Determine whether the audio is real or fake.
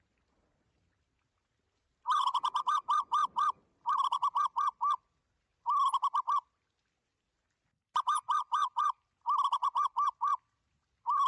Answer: real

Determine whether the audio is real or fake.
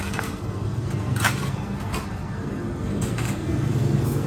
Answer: fake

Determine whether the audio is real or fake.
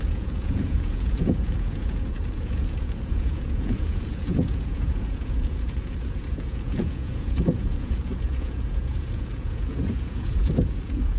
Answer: fake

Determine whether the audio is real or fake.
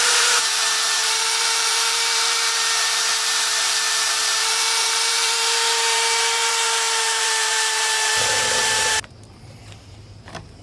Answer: fake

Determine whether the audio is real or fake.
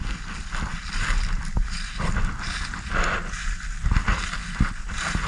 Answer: real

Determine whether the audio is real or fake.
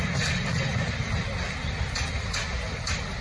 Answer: real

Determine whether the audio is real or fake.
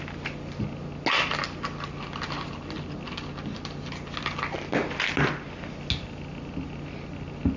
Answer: real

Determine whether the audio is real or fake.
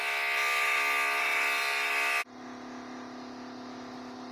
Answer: real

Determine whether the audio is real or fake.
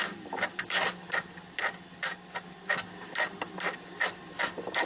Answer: real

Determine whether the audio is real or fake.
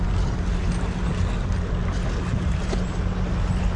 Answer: real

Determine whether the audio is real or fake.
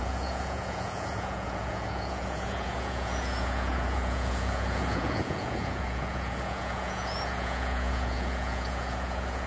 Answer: fake